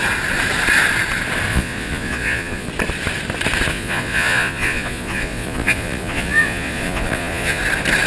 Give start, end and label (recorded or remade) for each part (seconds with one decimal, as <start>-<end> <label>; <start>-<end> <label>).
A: 0.0-1.5 recorded; 1.5-2.7 remade; 2.7-3.7 recorded; 3.7-7.6 remade; 7.6-8.1 recorded